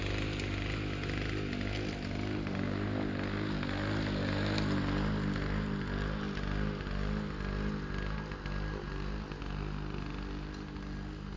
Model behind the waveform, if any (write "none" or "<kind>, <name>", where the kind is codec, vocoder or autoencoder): none